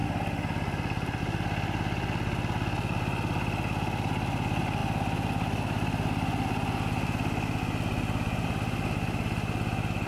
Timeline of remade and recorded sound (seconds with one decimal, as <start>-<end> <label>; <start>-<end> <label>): 0.0-10.1 recorded